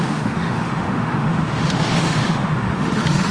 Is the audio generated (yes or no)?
yes